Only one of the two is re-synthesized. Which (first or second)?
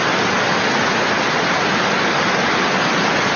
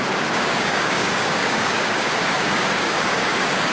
second